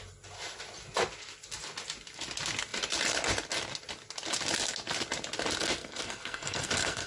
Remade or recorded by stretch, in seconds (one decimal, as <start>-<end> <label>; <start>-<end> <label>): 0.0-5.8 recorded; 5.8-7.1 remade